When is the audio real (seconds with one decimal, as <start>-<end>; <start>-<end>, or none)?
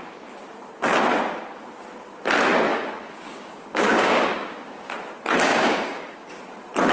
0.0-2.7; 4.9-5.5; 6.3-6.9